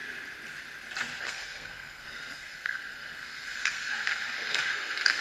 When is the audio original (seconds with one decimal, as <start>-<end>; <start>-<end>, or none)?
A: 0.0-1.2